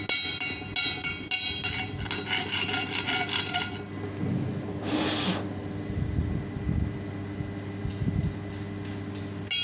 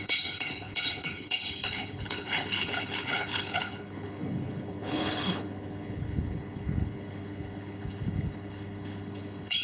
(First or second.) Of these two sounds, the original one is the first